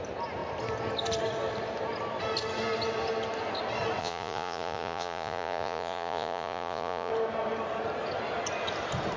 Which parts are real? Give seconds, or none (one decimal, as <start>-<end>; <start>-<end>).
0.0-4.0; 7.1-9.2